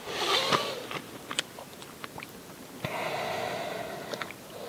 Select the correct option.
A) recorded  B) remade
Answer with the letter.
A